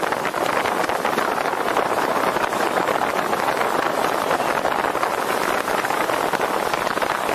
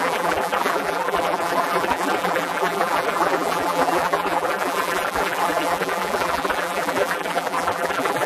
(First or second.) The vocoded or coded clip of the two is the second